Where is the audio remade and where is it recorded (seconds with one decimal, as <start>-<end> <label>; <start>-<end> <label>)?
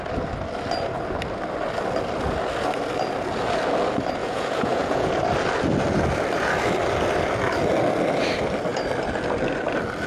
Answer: 0.0-4.2 recorded; 4.2-5.1 remade; 5.1-10.1 recorded